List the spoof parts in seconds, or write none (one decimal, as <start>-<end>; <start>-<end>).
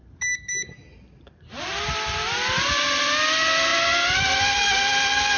none